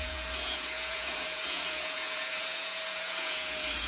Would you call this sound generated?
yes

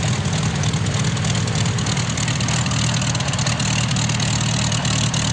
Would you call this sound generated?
no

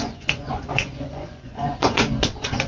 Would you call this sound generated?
yes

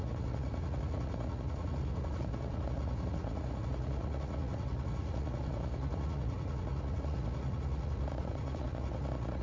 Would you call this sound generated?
yes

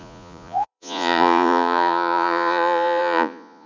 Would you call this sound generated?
yes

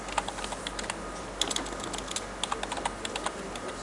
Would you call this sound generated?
no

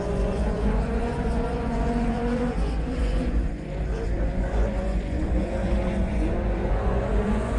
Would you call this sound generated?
yes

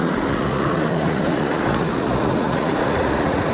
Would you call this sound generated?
yes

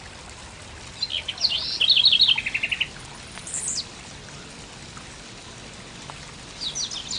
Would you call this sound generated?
no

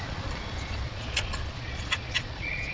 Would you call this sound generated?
yes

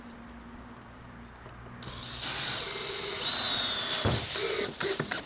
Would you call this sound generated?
no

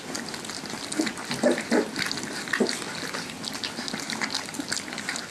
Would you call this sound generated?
no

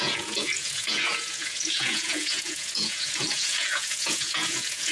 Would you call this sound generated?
yes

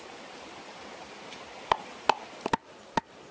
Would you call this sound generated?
no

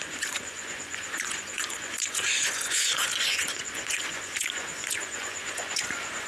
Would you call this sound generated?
yes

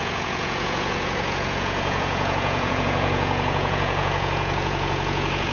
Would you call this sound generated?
yes